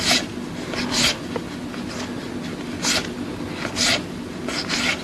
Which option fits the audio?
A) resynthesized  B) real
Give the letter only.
B